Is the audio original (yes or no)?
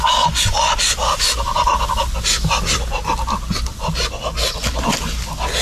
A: yes